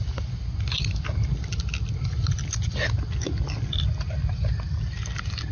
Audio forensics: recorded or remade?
recorded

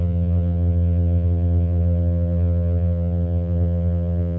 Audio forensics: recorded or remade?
remade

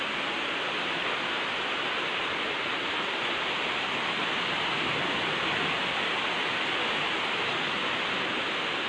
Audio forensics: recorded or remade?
recorded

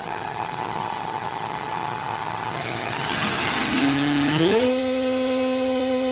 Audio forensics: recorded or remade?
remade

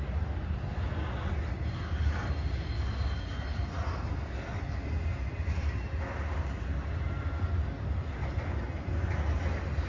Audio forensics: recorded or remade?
recorded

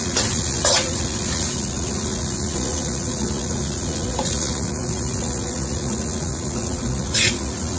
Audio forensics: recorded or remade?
remade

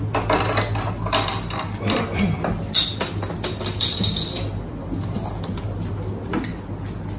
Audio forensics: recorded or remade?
recorded